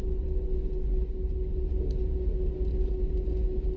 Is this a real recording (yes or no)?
yes